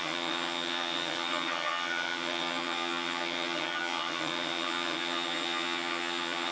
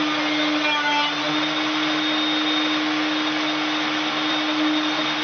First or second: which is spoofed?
first